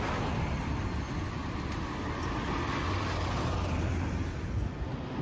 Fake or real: real